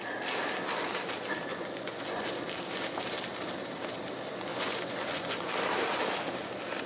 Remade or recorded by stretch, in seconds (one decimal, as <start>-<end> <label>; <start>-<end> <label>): 0.0-1.5 recorded; 1.5-2.3 remade; 2.3-4.5 recorded; 4.5-5.5 remade; 5.5-6.9 recorded